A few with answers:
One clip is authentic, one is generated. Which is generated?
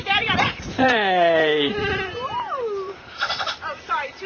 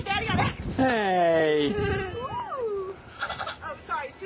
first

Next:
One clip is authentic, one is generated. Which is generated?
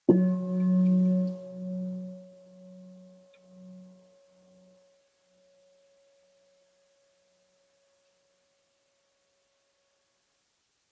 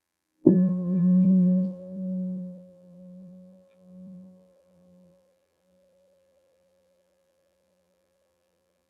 second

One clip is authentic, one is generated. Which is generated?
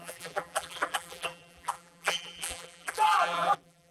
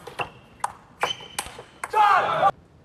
first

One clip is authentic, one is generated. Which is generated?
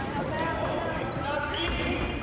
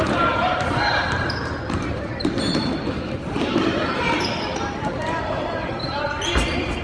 second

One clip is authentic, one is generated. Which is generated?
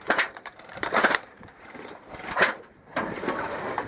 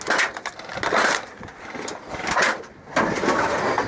first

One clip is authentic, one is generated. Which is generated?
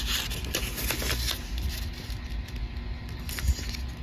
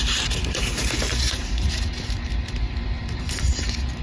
second